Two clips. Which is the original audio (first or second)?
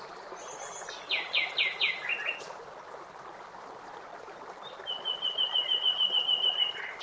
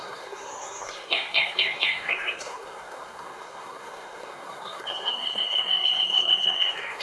first